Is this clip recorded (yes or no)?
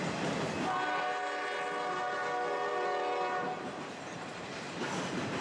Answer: yes